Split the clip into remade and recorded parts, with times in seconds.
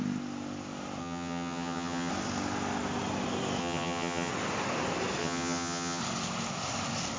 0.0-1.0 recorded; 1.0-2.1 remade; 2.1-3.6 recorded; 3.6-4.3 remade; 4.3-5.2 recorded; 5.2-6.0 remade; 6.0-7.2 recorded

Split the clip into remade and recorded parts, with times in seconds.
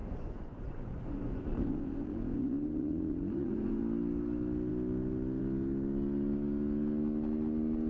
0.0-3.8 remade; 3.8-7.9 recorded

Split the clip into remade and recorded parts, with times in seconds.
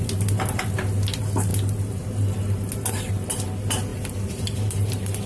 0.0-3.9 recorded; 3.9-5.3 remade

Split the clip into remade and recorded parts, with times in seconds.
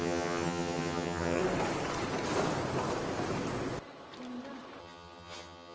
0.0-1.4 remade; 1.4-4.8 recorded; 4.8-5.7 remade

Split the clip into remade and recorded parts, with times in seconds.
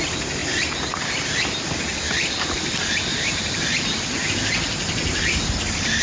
0.0-6.0 recorded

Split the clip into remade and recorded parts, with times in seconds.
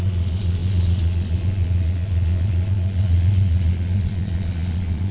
0.0-5.1 remade